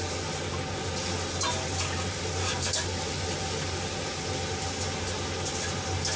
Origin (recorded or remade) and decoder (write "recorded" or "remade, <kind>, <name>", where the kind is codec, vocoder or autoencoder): recorded